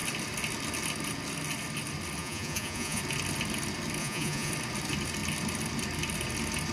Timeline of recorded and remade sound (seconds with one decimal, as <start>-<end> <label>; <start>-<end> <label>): 0.0-2.2 recorded; 2.2-3.0 remade; 3.0-4.0 recorded; 4.0-4.5 remade; 4.5-6.7 recorded